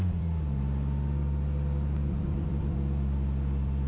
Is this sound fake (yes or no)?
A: yes